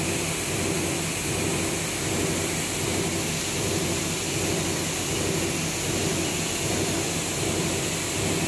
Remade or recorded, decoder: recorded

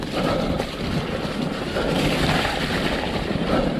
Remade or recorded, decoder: recorded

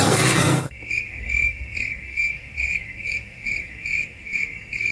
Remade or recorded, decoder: remade, codec, SNAC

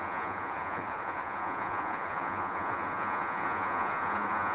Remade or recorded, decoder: remade, vocoder, Vocos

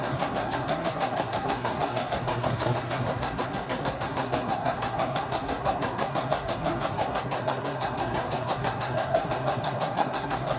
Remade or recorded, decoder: remade, codec, SNAC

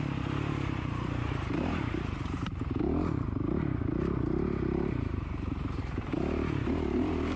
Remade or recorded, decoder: remade, vocoder, BigVGAN v2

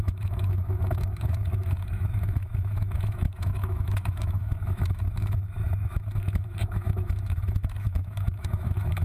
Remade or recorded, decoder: remade, autoencoder, DAC-VAE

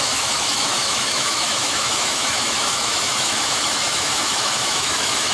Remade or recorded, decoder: remade, autoencoder, DAC-VAE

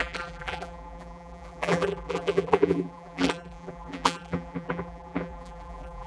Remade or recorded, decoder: remade, vocoder, BigVGAN v2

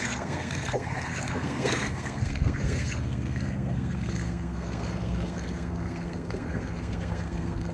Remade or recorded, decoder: remade, codec, SNAC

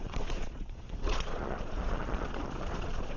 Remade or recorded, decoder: remade, vocoder, Vocos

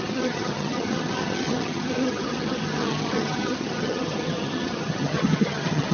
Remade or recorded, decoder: remade, vocoder, HiFi-GAN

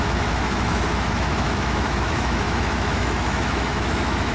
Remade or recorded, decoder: remade, autoencoder, DAC-VAE